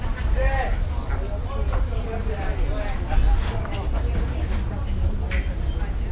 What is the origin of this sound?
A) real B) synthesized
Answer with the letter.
A